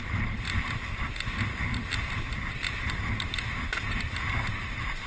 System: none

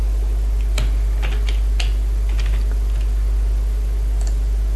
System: none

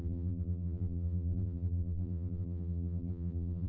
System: vocoder, BigVGAN v2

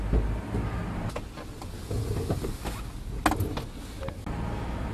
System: none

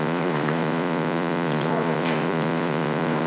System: vocoder, Vocos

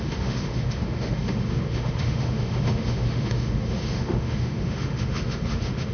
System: autoencoder, DAC-VAE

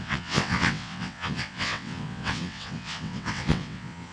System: vocoder, WaveNeXt